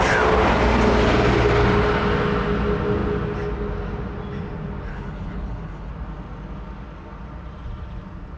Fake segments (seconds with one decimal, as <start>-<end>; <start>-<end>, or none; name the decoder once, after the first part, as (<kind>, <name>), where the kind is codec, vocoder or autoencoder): 4.9-5.9 (codec, HILCodec)